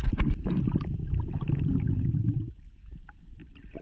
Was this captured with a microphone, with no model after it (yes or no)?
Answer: yes